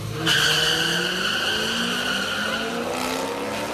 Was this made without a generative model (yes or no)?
yes